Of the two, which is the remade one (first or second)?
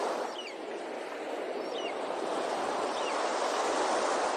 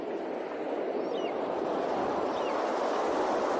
first